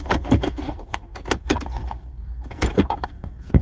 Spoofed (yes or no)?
yes